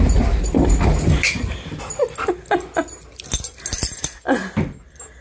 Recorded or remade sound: recorded